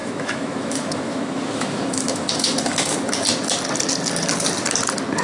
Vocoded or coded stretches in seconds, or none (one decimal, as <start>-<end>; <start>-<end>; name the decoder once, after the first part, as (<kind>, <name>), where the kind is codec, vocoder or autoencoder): 0.0-3.1 (autoencoder, DAC-VAE)